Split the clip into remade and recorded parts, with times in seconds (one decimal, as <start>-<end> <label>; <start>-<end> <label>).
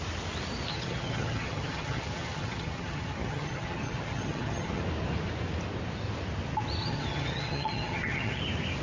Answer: 0.0-0.7 recorded; 0.7-4.8 remade; 4.8-6.8 recorded; 6.8-8.4 remade; 8.4-8.8 recorded